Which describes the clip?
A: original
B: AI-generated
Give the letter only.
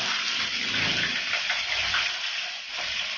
A